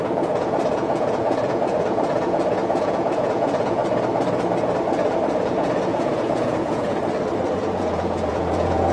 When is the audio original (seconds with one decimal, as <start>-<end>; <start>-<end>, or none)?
3.8-5.4; 7.0-7.5